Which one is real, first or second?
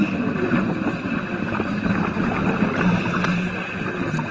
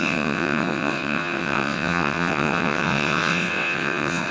first